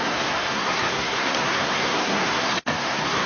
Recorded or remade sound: remade